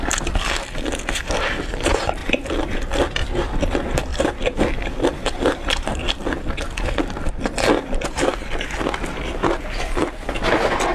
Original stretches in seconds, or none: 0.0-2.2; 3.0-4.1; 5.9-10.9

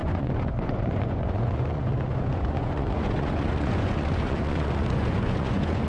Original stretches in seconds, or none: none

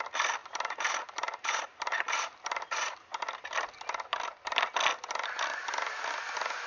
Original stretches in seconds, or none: 0.0-0.4; 3.3-6.7